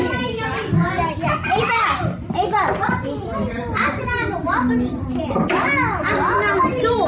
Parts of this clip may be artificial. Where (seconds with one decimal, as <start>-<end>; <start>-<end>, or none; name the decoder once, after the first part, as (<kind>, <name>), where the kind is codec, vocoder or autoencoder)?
0.0-0.6 (vocoder, BigVGAN v2); 1.6-4.4; 6.5-7.1